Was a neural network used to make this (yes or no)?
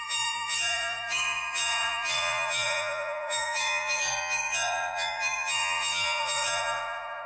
yes